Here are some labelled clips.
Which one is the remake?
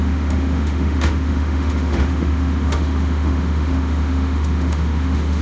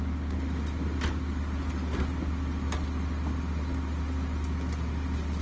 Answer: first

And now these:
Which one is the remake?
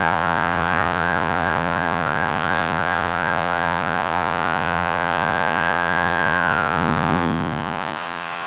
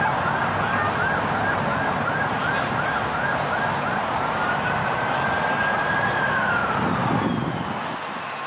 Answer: first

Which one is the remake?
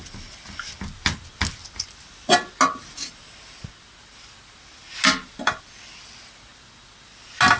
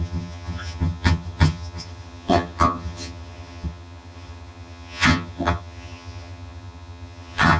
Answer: second